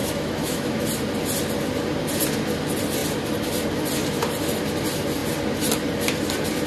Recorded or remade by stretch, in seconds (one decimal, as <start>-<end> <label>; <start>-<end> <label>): 0.0-0.8 remade; 0.8-6.7 recorded